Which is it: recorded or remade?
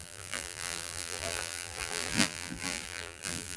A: remade